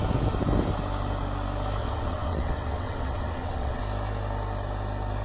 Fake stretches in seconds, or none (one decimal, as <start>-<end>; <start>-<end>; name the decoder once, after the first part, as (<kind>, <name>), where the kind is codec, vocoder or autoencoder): 1.8-3.8 (vocoder, WaveNeXt)